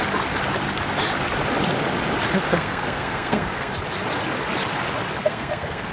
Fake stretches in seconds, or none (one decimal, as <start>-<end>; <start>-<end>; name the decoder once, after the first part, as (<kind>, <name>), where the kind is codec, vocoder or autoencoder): 2.5-3.7 (codec, SNAC); 5.2-5.9